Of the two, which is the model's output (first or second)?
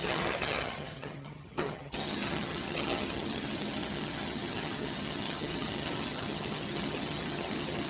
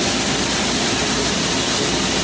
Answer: first